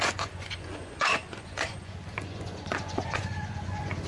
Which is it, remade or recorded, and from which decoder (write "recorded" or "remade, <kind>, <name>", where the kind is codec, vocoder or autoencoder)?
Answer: remade, vocoder, Vocos